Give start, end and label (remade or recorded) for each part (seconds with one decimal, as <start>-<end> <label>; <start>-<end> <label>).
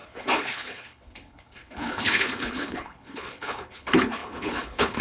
0.0-5.0 remade